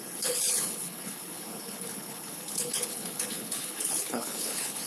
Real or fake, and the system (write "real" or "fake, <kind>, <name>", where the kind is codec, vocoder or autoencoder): fake, codec, HILCodec